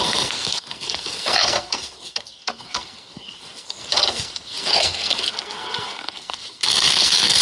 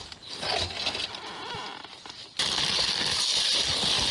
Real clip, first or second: second